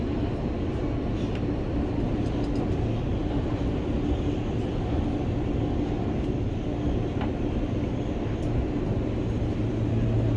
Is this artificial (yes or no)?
no